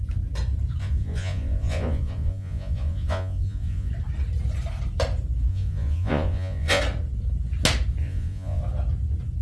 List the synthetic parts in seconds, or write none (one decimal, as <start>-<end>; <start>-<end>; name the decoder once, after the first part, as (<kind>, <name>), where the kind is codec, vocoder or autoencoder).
0.8-3.9 (vocoder, Vocos); 5.5-6.8; 8.0-8.6